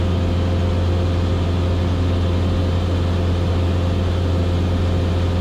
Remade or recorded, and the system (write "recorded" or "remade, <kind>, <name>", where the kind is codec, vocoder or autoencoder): recorded